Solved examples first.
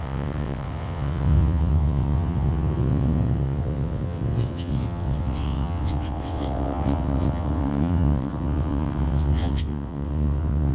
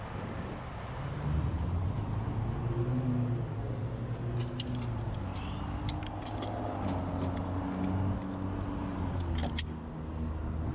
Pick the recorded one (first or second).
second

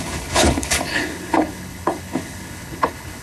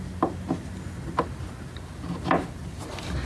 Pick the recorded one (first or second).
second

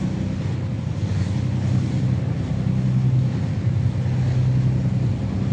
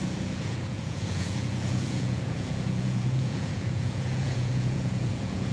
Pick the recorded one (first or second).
first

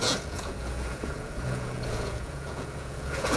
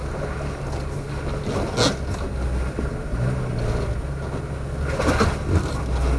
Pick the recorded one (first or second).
second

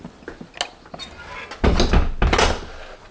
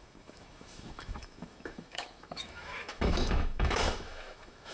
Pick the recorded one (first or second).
first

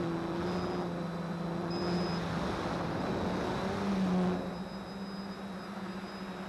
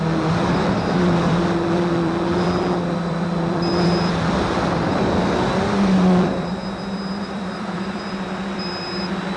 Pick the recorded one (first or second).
first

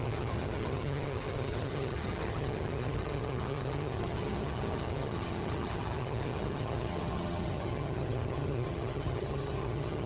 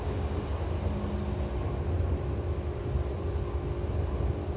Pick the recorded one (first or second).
second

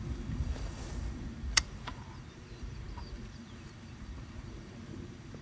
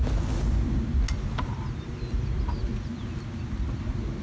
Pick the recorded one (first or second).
second